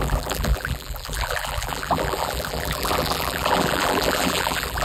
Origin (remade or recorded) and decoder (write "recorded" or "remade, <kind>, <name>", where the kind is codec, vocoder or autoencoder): remade, vocoder, BigVGAN v2